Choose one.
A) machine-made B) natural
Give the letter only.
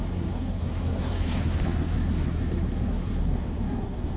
A